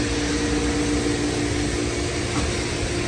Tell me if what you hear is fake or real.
real